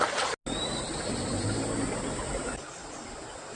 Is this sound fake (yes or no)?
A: no